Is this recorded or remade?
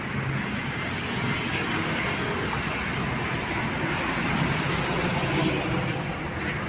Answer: recorded